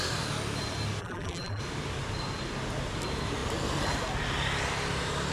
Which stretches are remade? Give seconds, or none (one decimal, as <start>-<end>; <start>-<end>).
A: 1.0-1.6